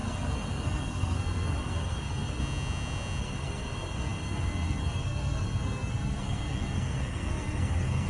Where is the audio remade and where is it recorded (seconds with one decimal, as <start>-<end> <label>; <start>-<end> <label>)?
0.0-2.4 remade; 2.4-3.2 recorded; 3.2-8.1 remade